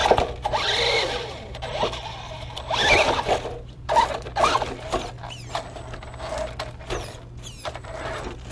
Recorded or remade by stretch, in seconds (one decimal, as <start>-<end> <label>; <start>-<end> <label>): 0.0-5.1 remade; 5.1-8.5 recorded